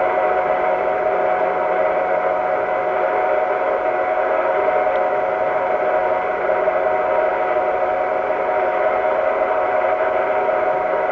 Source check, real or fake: real